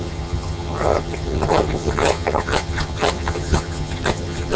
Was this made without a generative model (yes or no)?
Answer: no